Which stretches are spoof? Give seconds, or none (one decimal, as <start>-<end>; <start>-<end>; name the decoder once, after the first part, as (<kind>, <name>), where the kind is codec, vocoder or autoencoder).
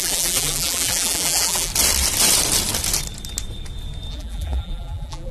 0.0-1.7 (vocoder, BigVGAN v2); 4.1-5.3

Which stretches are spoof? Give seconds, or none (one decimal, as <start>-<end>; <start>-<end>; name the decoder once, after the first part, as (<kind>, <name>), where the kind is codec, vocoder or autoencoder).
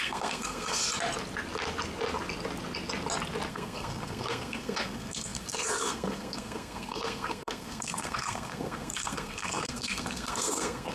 0.0-0.8 (codec, SNAC); 3.5-10.9